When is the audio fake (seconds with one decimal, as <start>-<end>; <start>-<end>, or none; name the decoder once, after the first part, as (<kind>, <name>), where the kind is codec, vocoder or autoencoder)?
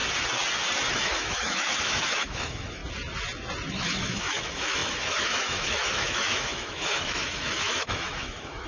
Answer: 0.9-2.8 (autoencoder, DAC-VAE); 3.7-8.7